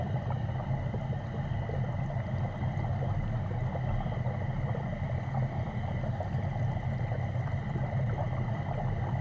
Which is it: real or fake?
real